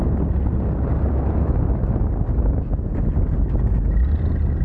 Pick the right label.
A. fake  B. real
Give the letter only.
B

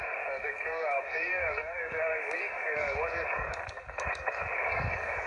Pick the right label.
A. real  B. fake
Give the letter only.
B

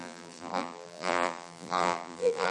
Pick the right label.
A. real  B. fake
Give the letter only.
B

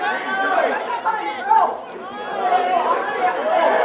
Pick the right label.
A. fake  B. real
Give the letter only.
B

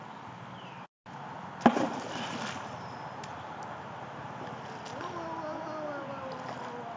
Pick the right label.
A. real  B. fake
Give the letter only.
A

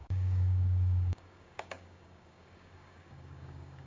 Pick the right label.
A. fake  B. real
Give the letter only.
A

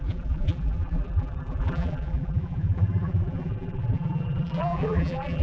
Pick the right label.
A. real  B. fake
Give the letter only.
B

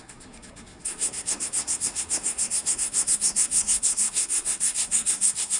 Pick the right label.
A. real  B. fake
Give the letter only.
B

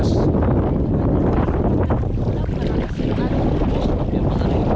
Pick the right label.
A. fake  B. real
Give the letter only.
B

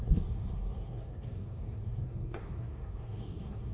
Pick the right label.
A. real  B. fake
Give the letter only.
B